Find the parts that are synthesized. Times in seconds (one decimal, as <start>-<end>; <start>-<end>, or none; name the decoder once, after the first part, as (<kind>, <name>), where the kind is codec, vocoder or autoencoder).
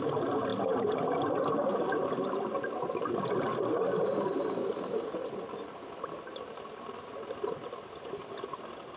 0.5-5.1 (vocoder, BigVGAN v2)